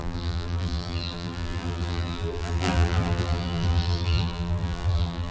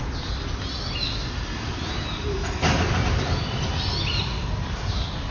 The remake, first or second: first